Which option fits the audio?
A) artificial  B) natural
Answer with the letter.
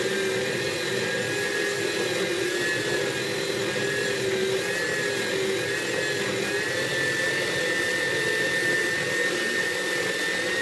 B